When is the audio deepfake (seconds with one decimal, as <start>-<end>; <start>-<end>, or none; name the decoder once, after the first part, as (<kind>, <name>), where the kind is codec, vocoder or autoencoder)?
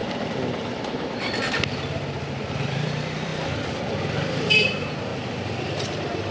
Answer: 2.5-3.3 (vocoder, BigVGAN v2); 4.5-5.1; 5.6-6.3